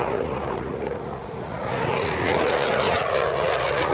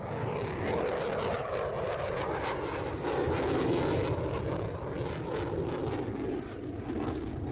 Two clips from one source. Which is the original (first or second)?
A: second